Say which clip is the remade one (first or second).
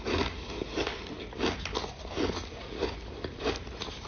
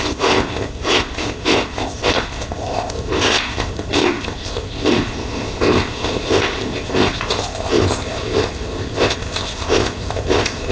second